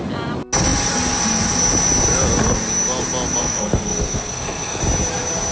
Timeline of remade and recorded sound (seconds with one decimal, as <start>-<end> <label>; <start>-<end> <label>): 0.0-3.4 recorded; 3.4-4.8 remade; 4.8-5.5 recorded